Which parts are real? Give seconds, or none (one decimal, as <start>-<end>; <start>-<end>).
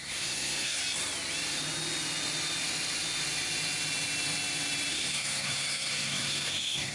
0.8-4.9